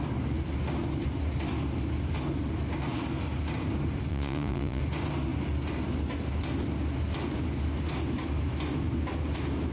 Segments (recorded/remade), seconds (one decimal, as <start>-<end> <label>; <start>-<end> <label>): 0.0-4.1 recorded; 4.1-4.8 remade; 4.8-9.7 recorded